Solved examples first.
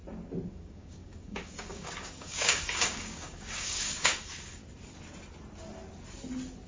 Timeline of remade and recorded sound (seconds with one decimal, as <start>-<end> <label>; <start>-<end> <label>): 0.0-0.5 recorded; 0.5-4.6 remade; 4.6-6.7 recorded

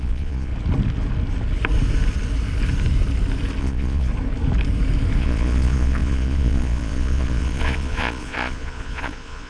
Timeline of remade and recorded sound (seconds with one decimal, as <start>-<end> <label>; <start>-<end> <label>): 0.0-0.5 remade; 0.5-3.6 recorded; 3.6-4.1 remade; 4.1-5.2 recorded; 5.2-9.5 remade

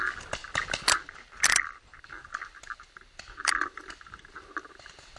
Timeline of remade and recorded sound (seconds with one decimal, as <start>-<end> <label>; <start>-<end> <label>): 0.0-5.2 recorded

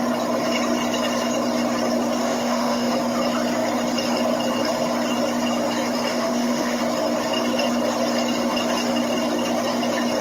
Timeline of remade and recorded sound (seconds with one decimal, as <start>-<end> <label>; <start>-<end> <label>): 0.0-2.2 recorded; 2.2-2.9 remade; 2.9-6.1 recorded; 6.1-6.8 remade; 6.8-10.2 recorded

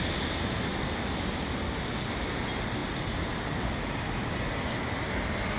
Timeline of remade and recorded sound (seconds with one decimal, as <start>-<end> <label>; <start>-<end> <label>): 0.0-5.6 recorded

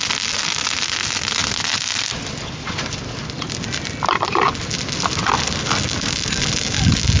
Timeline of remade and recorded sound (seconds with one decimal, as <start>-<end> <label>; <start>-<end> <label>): 0.0-7.2 recorded